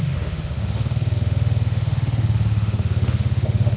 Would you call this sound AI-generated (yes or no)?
yes